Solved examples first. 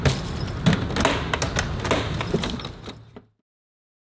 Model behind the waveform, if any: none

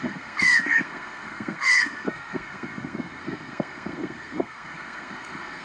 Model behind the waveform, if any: codec, SNAC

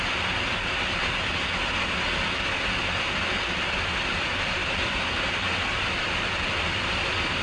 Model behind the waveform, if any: none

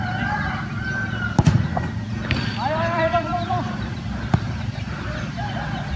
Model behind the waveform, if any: vocoder, BigVGAN v2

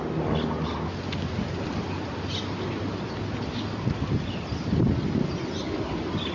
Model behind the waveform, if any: none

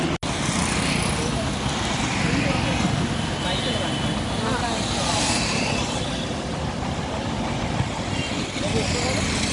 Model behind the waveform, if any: none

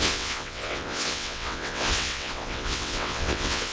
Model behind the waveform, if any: vocoder, WaveNeXt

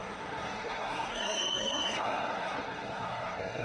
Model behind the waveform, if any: codec, SNAC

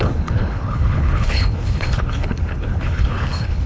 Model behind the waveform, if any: codec, HILCodec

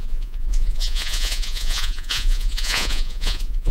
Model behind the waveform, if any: vocoder, Vocos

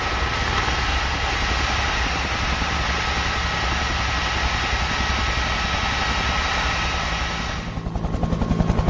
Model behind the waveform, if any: none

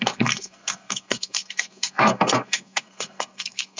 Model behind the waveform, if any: codec, SNAC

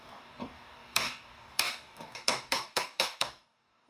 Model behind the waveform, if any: codec, DAC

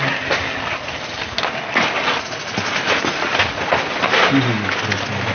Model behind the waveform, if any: none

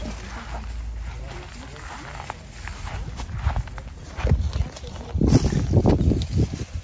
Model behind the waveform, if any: none